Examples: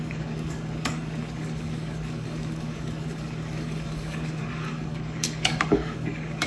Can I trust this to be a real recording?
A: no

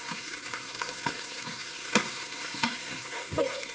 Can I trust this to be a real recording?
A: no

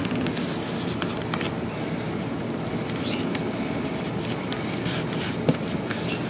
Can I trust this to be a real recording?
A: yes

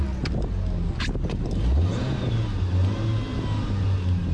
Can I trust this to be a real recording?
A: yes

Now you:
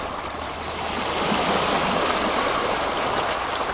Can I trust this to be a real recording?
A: yes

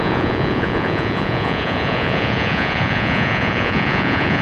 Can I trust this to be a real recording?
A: no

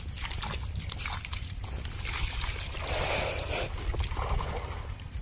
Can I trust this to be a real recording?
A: yes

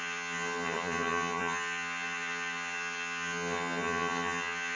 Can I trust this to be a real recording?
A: no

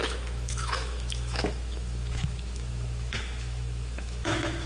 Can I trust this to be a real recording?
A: no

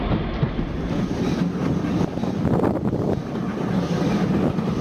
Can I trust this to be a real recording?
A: yes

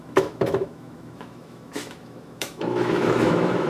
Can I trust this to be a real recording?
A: no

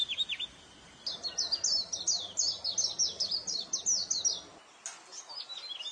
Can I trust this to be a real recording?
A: yes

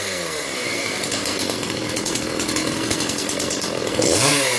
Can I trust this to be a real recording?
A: no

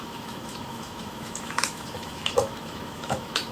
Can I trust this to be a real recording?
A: no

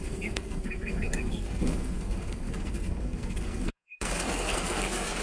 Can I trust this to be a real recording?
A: no